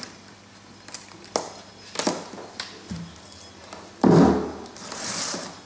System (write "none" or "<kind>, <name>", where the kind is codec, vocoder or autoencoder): none